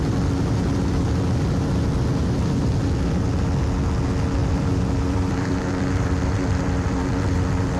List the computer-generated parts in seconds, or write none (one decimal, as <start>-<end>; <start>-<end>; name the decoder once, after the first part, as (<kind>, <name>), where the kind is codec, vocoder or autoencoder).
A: 4.4-7.8 (vocoder, BigVGAN v2)